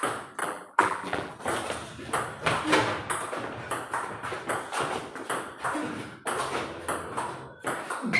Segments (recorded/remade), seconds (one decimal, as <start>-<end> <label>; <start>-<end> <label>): 0.0-0.4 recorded; 0.4-1.3 remade; 1.3-8.2 recorded